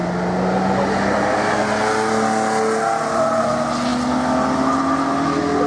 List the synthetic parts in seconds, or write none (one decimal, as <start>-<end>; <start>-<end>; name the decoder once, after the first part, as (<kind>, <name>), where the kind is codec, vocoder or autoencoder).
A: none